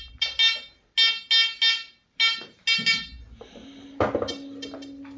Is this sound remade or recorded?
recorded